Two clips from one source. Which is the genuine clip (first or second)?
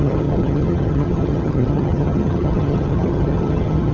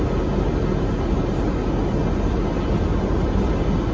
second